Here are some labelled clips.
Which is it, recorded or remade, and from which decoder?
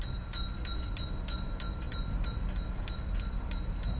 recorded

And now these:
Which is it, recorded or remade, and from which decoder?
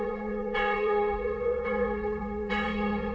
remade, vocoder, WaveNeXt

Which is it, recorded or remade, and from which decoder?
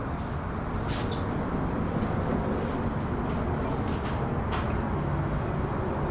recorded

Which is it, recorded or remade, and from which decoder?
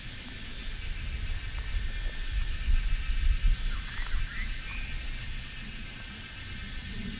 recorded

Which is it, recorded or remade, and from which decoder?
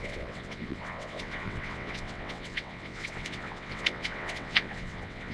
remade, vocoder, WaveNeXt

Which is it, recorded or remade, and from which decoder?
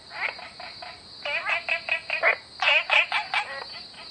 recorded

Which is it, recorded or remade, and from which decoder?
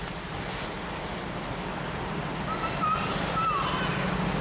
recorded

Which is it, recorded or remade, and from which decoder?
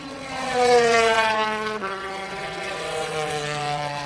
remade, vocoder, WaveNeXt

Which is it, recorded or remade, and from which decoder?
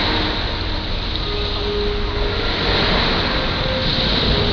recorded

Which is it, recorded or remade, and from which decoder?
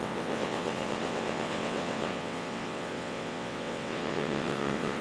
remade, vocoder, WaveNeXt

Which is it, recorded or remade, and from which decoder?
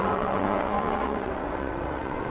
remade, vocoder, WaveNeXt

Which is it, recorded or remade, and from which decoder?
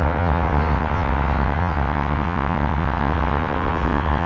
remade, vocoder, WaveNeXt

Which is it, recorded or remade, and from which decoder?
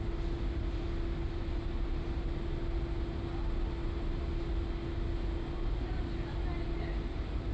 recorded